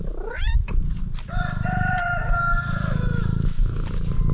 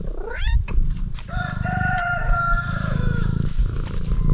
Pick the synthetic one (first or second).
second